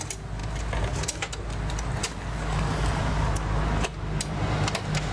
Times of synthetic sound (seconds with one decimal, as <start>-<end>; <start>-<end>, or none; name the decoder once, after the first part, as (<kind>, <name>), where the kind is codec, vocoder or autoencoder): 2.0-3.0 (codec, DAC)